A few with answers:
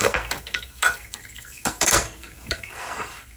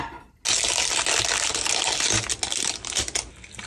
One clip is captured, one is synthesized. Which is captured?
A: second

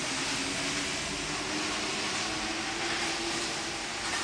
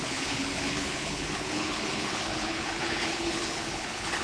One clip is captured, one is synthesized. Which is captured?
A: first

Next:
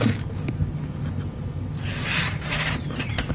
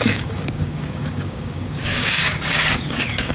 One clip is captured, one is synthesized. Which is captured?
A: first